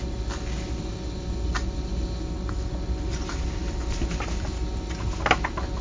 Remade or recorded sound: recorded